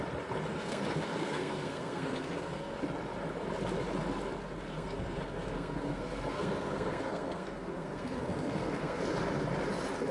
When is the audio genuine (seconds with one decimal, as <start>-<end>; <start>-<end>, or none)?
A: 0.0-0.5; 2.8-4.7; 9.0-10.1

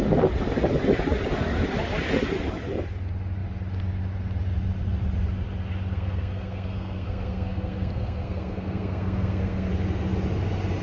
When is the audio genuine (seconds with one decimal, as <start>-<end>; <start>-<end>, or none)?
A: 0.0-5.9; 9.7-10.8

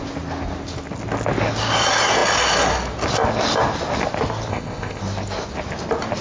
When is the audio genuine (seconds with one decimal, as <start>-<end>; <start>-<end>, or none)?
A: 0.0-4.5; 5.0-6.2

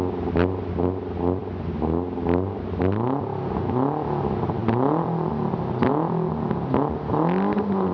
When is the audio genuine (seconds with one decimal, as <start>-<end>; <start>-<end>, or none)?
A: 0.0-7.9